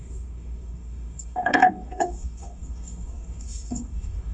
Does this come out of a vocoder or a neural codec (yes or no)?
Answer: yes